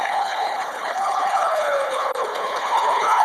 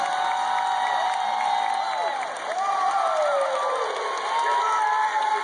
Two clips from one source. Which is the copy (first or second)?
first